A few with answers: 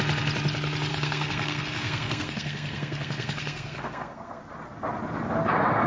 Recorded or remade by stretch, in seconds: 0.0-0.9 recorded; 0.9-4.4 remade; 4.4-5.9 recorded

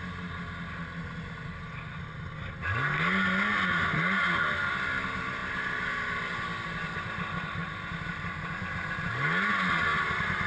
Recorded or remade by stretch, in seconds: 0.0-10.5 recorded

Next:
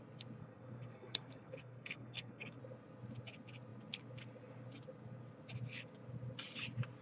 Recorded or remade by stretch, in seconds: 0.0-0.4 recorded; 0.4-2.6 remade; 2.6-7.0 recorded

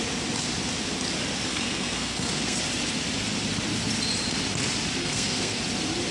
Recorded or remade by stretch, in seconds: 0.0-1.5 recorded; 1.5-2.6 remade; 2.6-5.0 recorded; 5.0-5.6 remade; 5.6-6.1 recorded